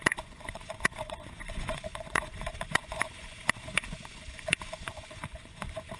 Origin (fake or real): fake